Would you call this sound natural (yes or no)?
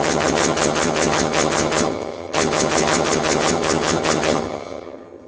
no